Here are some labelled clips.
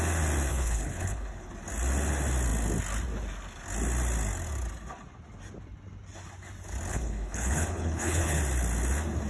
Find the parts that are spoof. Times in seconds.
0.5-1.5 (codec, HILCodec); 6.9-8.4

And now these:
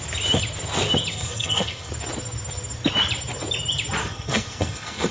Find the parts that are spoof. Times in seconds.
1.1-1.9 (codec, SNAC); 4.0-5.1

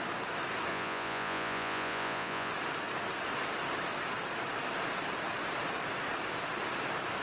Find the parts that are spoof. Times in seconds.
0.7-2.5 (vocoder, Vocos)

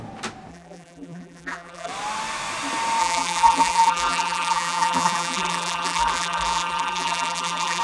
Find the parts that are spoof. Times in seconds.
0.5-1.9 (vocoder, BigVGAN v2); 3.0-7.8

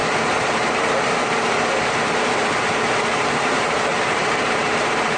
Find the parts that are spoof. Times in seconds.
0.5-1.2 (vocoder, BigVGAN v2); 3.2-5.2